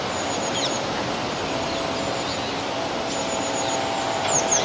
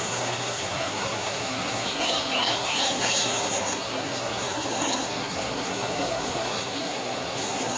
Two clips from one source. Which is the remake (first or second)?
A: second